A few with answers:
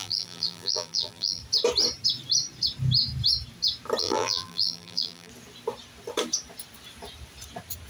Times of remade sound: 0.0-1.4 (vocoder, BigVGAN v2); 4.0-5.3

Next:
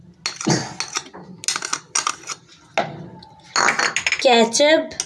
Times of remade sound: none

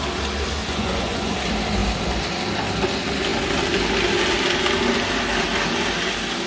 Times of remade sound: 0.6-1.3 (vocoder, Vocos)

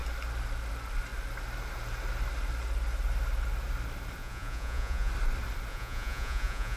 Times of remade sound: 4.2-5.1 (vocoder, Vocos); 5.7-6.8

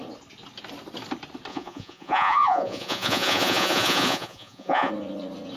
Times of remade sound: 1.5-4.9 (vocoder, Vocos)